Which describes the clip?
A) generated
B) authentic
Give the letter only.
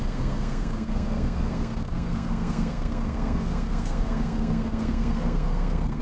A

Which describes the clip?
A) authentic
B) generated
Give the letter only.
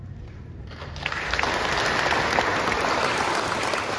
A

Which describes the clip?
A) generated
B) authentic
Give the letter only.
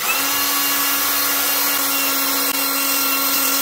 B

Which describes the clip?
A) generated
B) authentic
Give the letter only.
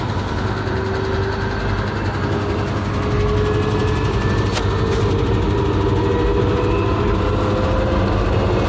B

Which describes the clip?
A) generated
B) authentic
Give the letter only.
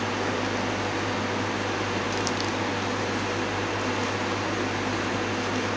B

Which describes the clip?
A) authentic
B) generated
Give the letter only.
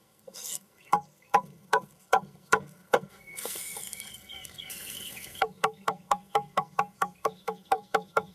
B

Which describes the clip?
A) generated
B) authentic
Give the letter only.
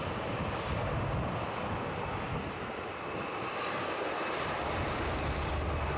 B